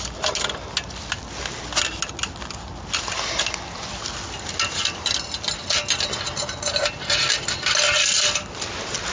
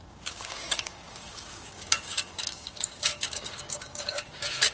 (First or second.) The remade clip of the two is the second